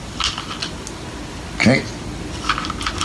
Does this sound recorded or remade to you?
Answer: recorded